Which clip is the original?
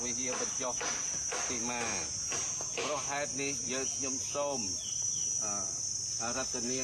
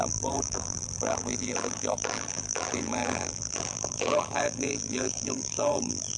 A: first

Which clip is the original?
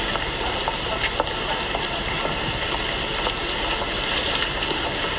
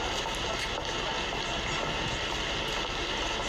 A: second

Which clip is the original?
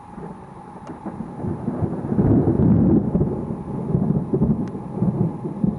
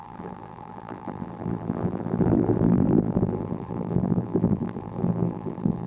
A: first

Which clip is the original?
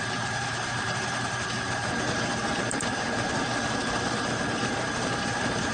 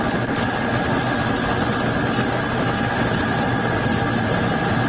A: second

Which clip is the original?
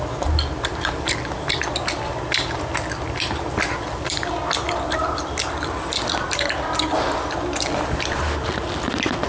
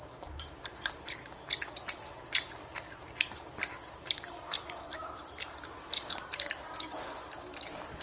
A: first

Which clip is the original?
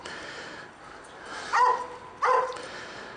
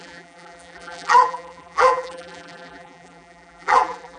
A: first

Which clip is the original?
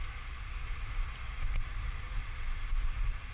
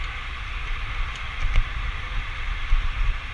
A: first